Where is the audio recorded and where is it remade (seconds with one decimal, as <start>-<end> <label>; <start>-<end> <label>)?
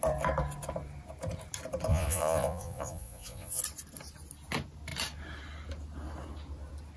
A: 0.0-1.9 recorded; 1.9-3.6 remade; 3.6-7.0 recorded